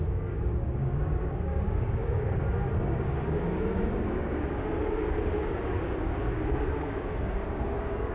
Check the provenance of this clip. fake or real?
fake